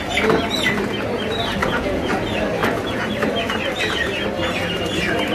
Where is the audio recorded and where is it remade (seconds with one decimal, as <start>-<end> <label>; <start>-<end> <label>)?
0.0-1.6 recorded; 1.6-2.1 remade; 2.1-2.6 recorded; 2.6-3.1 remade; 3.1-5.3 recorded